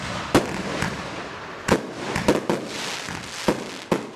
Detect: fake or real real